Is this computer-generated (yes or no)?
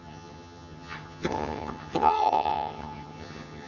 yes